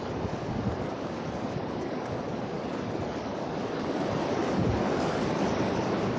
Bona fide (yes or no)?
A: no